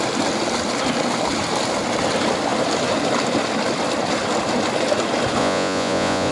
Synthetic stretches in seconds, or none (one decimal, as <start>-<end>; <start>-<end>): 5.4-6.3

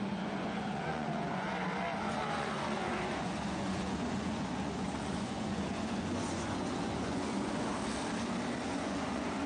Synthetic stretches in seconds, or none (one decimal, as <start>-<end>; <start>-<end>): 0.0-1.5; 2.0-7.7; 8.6-9.5

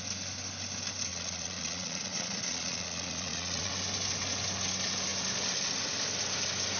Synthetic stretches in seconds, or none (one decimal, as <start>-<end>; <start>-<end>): 1.1-3.7

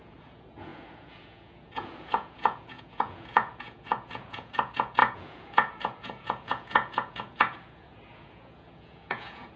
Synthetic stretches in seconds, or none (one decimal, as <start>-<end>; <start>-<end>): 0.0-9.6